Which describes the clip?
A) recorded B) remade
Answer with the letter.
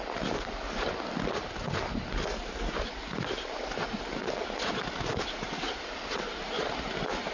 A